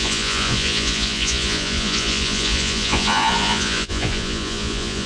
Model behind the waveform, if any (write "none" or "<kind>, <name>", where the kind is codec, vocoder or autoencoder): vocoder, Vocos